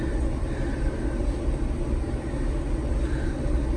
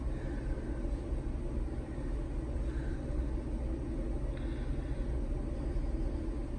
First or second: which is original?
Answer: second